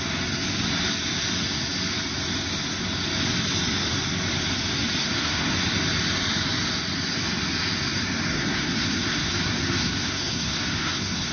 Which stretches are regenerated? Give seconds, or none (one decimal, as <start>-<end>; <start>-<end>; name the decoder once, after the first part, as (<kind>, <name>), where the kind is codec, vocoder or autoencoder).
5.0-5.5 (codec, SNAC); 8.3-11.3